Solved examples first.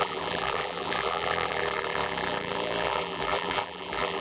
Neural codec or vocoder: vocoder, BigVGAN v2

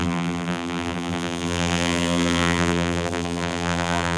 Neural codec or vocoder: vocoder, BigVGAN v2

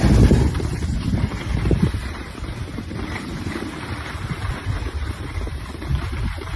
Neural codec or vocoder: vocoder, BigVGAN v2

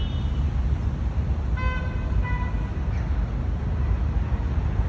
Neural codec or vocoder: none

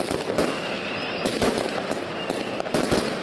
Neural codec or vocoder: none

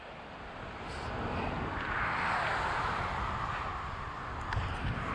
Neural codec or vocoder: none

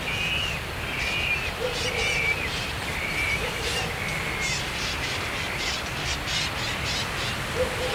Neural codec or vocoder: none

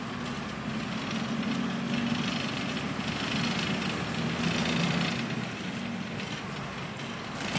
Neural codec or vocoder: none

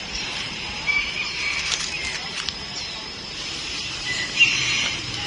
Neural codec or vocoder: vocoder, BigVGAN v2